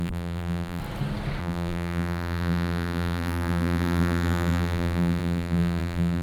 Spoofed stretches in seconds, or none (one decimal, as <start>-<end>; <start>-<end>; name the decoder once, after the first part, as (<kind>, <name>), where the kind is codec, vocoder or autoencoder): 0.0-0.8 (vocoder, BigVGAN v2); 1.4-6.2